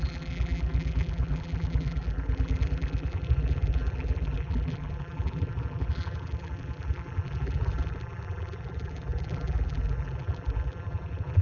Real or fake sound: fake